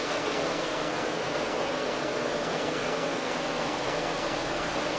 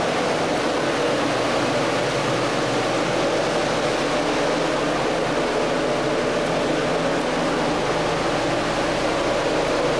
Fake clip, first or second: first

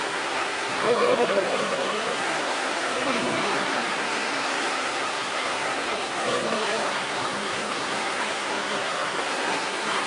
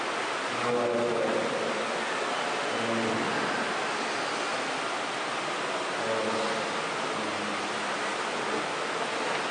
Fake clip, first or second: first